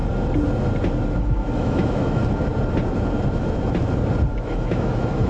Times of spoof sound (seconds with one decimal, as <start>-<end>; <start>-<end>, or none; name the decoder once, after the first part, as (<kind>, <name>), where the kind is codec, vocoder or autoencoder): 1.2-2.2 (autoencoder, DAC-VAE); 4.3-5.3